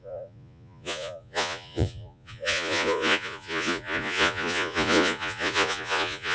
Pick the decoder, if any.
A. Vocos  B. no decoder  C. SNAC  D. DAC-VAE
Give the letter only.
A